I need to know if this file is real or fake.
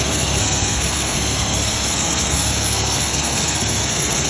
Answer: fake